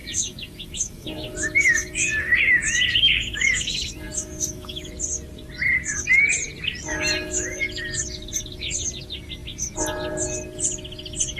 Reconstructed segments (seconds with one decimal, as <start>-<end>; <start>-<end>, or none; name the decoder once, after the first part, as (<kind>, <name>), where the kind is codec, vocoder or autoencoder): 0.0-4.9 (autoencoder, DAC-VAE); 6.9-7.6